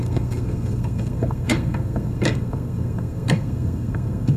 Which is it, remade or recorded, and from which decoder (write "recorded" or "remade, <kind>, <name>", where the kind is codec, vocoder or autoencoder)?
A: remade, codec, SNAC